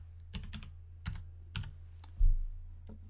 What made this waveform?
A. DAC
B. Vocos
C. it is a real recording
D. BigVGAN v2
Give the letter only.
C